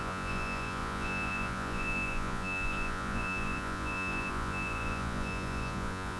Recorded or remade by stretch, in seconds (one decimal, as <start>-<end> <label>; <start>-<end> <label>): 0.0-6.2 remade